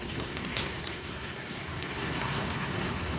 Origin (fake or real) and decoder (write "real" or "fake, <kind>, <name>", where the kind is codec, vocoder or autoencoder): fake, codec, SNAC